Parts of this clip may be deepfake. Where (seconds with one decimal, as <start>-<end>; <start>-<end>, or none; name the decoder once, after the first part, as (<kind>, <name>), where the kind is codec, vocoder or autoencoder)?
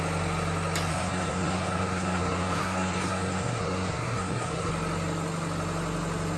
0.9-4.7 (codec, SNAC)